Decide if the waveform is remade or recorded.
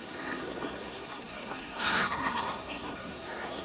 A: remade